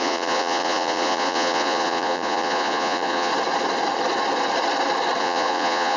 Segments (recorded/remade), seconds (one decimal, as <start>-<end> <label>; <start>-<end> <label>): 0.0-3.3 remade; 3.3-5.2 recorded; 5.2-6.0 remade